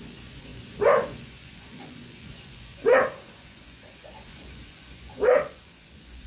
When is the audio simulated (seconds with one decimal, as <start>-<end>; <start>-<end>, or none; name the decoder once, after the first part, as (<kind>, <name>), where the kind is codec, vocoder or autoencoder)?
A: 0.0-6.3 (vocoder, Vocos)